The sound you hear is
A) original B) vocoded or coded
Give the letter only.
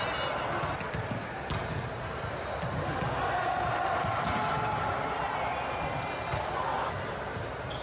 A